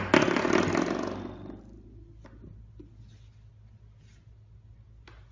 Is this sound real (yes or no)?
yes